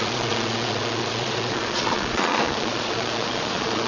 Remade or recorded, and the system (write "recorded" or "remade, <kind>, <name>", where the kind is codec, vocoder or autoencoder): remade, vocoder, Vocos